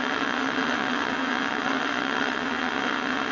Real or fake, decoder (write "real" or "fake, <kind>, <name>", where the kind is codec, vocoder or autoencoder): fake, vocoder, WaveNeXt